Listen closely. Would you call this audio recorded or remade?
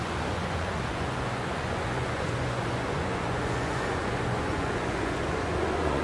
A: remade